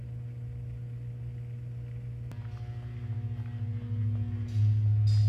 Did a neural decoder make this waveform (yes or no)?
no